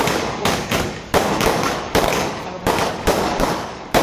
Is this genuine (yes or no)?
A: no